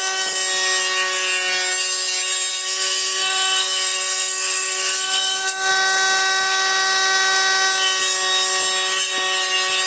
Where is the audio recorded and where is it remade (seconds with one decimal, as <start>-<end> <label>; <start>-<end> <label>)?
0.0-2.5 recorded; 2.5-5.7 remade; 5.7-9.9 recorded